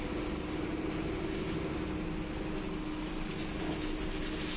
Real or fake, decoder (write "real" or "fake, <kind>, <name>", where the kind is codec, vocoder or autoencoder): real